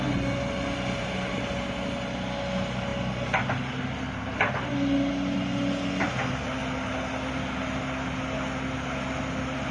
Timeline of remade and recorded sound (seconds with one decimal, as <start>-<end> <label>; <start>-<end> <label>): 0.0-9.7 recorded